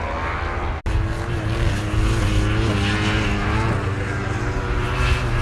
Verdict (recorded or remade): recorded